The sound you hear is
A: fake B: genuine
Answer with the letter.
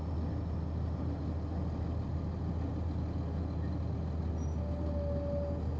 B